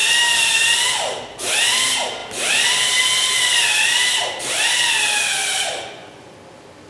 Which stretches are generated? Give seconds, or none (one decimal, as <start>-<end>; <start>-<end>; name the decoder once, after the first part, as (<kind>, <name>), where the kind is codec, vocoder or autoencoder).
5.7-6.3 (vocoder, Vocos)